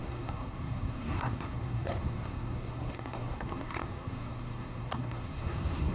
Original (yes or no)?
no